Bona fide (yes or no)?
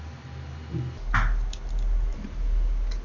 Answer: yes